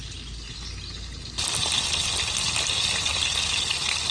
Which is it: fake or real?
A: real